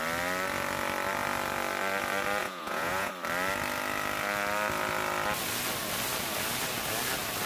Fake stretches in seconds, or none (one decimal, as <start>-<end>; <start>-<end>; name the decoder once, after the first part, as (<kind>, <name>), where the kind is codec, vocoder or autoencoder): 2.4-3.1 (vocoder, Vocos)

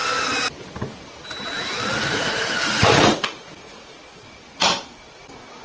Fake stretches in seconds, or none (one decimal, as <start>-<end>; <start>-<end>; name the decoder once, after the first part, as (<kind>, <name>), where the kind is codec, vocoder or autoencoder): 2.0-4.0 (vocoder, Vocos)

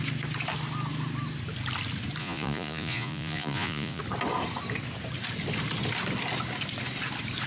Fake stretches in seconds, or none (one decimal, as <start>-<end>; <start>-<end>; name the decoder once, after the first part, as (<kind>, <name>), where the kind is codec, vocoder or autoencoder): 2.2-4.0 (vocoder, Vocos)

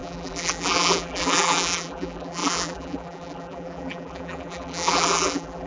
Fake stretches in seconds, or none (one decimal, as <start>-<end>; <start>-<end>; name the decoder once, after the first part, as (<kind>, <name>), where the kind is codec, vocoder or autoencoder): 0.0-5.7 (vocoder, BigVGAN v2)

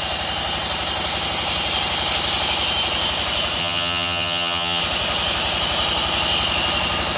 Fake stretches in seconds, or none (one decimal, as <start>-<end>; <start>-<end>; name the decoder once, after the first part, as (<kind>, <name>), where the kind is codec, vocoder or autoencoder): 3.6-4.8 (vocoder, HiFi-GAN)